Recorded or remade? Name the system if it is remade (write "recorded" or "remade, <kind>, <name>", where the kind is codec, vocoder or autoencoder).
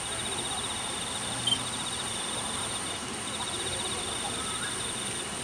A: remade, vocoder, BigVGAN v2